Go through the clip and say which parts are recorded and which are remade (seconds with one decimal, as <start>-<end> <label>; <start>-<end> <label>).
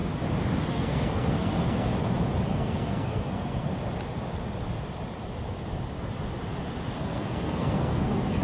0.0-0.7 recorded; 0.7-1.9 remade; 1.9-2.5 recorded; 2.5-3.7 remade; 3.7-7.0 recorded; 7.0-8.4 remade